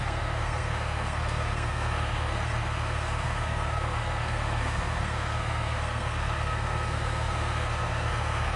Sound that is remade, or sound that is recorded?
remade